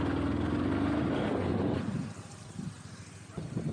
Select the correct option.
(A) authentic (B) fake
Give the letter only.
A